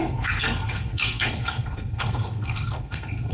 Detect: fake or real fake